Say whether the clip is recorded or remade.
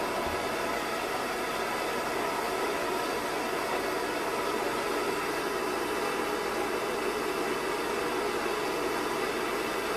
recorded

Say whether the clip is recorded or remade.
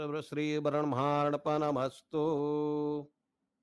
recorded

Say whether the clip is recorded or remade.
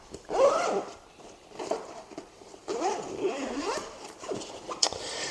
remade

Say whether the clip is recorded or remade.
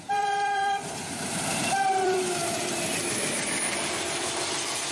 remade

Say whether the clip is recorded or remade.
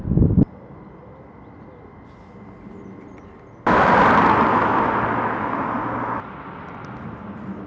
recorded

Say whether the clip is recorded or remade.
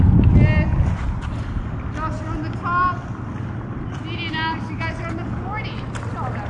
recorded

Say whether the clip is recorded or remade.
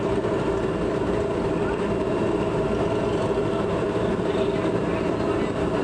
remade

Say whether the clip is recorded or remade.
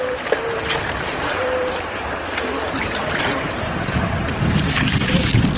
remade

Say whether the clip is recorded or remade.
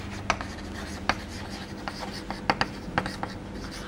recorded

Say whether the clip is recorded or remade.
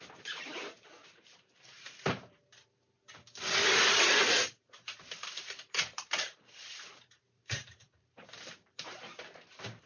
remade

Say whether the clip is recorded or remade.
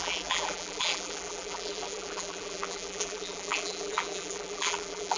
remade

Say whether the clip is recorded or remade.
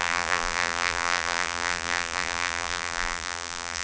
remade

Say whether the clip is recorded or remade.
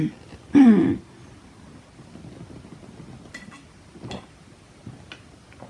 recorded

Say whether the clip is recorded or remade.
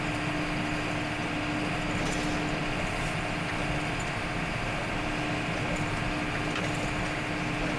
recorded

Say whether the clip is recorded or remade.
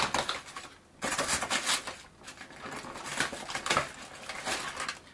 recorded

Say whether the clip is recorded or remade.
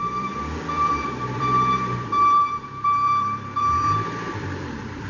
remade